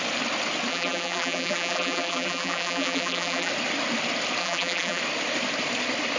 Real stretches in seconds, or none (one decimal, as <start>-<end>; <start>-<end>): 0.0-0.7; 3.5-4.4; 5.0-6.2